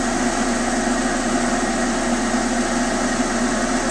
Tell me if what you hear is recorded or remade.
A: recorded